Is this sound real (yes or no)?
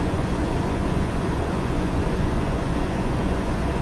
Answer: no